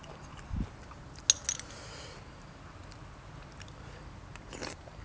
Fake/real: real